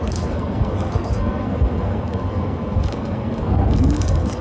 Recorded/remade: remade